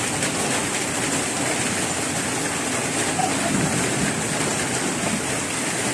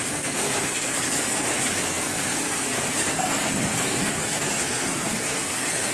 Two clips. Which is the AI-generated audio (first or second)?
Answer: second